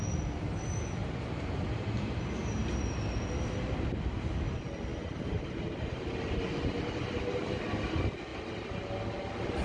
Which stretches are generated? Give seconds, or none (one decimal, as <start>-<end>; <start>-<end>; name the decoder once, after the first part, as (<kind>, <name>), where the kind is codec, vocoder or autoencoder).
1.0-3.1 (vocoder, BigVGAN v2); 4.9-6.4